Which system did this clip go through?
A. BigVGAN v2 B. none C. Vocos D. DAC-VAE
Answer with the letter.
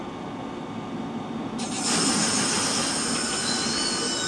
B